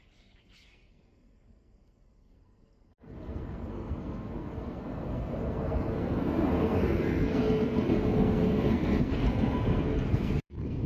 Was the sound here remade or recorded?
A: remade